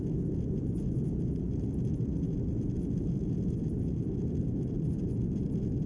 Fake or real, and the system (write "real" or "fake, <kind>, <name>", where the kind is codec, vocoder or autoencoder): real